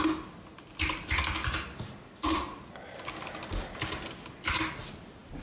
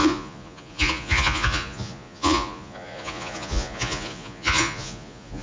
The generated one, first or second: second